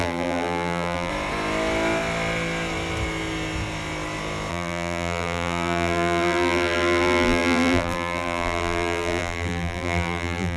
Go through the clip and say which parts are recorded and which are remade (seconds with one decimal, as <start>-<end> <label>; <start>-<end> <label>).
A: 0.0-1.1 remade; 1.1-4.5 recorded; 4.5-10.6 remade